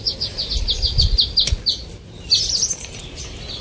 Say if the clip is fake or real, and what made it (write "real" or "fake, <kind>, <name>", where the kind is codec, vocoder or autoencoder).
real